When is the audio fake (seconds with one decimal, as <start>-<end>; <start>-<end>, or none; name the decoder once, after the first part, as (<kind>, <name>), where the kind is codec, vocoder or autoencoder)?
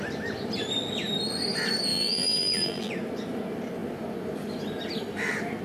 1.9-2.9 (vocoder, BigVGAN v2)